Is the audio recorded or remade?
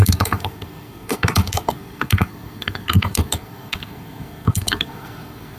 remade